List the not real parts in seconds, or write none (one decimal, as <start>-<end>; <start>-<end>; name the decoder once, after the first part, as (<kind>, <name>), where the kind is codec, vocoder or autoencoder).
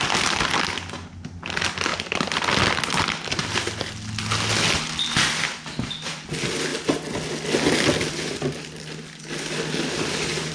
1.9-2.8 (vocoder, BigVGAN v2)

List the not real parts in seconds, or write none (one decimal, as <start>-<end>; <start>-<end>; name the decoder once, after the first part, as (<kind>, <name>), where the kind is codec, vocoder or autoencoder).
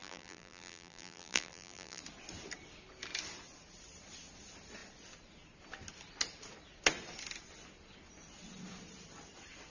0.0-2.0 (vocoder, BigVGAN v2)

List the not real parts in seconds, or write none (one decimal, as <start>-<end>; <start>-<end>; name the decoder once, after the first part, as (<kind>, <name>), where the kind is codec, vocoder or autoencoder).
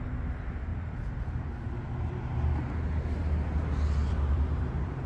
0.7-2.7 (vocoder, BigVGAN v2); 4.0-5.1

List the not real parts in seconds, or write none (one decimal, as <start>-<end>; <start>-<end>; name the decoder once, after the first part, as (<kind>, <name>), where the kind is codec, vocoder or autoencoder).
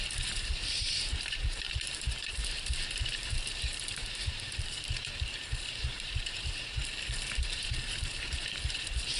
0.0-6.8 (vocoder, BigVGAN v2); 7.4-9.2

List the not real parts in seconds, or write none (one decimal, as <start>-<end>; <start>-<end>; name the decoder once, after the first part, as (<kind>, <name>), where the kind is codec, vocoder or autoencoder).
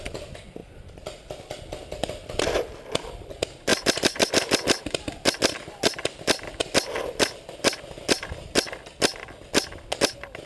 0.6-1.6 (vocoder, BigVGAN v2); 3.7-4.3; 6.6-8.5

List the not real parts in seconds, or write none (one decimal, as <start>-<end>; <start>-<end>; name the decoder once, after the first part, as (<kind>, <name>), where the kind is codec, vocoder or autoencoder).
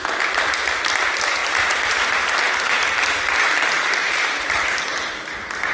1.4-4.8 (vocoder, BigVGAN v2)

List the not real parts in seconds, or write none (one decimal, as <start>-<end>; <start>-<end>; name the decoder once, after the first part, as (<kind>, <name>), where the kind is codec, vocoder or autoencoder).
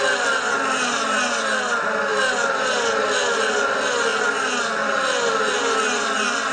none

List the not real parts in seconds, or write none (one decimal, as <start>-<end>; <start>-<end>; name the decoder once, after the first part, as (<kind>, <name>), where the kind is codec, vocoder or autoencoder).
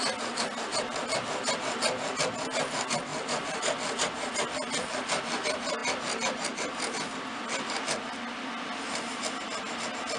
3.1-3.6 (vocoder, BigVGAN v2)